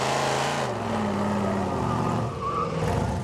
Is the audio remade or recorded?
recorded